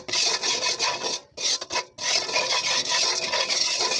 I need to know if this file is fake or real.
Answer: real